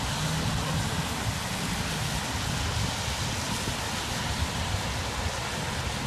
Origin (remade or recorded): recorded